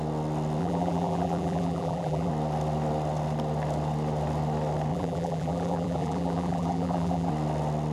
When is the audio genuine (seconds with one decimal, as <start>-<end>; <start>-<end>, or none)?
0.0-0.6; 2.3-4.9; 7.3-7.9